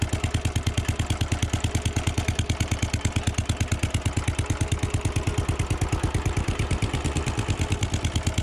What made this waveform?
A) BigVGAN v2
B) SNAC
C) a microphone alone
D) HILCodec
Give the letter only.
C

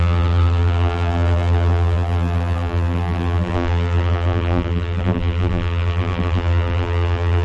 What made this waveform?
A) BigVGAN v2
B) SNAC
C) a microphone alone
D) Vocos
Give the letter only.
A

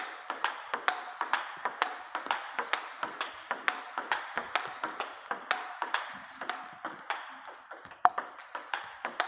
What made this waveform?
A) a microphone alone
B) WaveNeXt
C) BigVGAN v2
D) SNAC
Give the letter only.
A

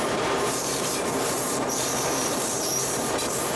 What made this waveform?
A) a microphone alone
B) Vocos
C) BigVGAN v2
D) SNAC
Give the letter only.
C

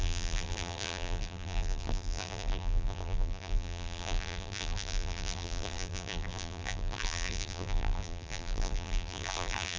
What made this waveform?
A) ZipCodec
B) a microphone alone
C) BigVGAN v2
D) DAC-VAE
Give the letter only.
C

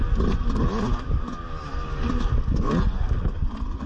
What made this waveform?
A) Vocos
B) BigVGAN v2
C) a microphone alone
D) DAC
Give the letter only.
C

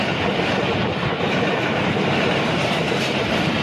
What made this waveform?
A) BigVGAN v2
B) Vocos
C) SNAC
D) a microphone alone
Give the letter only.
A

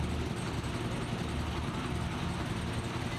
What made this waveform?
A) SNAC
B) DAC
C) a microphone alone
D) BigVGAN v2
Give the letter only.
C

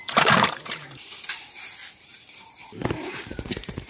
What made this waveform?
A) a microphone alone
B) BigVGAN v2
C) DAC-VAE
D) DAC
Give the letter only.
B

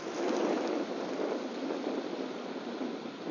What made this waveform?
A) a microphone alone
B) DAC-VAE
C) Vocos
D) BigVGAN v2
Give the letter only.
A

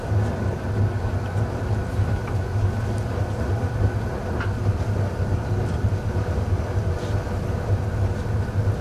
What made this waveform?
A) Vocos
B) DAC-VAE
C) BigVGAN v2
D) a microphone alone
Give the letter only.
D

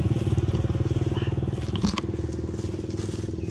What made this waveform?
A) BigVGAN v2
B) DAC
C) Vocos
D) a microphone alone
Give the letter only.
D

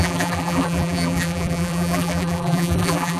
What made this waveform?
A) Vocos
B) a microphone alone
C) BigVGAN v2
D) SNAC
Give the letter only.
C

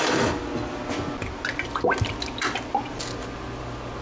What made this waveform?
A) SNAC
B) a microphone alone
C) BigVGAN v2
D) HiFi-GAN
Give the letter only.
B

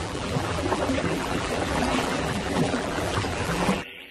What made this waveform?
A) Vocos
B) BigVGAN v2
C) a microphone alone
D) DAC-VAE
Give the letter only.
B